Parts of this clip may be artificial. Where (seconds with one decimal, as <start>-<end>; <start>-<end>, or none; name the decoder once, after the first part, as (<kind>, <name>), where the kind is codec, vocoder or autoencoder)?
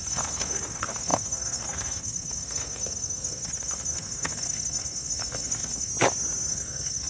0.0-5.9 (codec, SNAC); 6.5-7.1